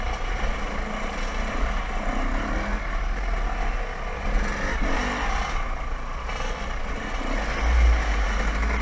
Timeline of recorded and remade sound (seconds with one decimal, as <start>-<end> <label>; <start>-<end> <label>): 0.0-8.8 recorded